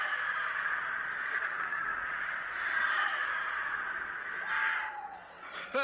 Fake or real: fake